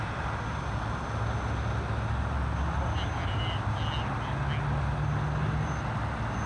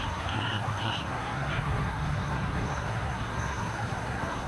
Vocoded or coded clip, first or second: second